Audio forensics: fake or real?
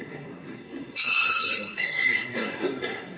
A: fake